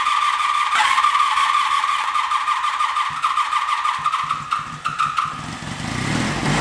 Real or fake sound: real